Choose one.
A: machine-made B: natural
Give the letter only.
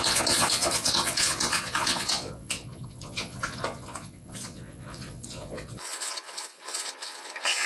A